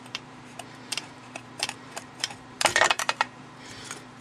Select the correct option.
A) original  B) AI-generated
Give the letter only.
B